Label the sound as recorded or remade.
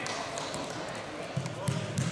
recorded